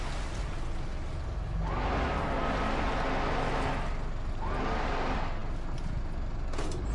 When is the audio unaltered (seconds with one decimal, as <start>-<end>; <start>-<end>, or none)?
0.0-6.9